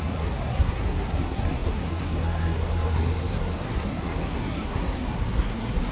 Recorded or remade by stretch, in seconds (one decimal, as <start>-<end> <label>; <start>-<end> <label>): 0.0-5.9 remade